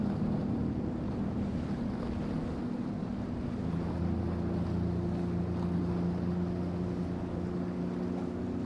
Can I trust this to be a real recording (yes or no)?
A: yes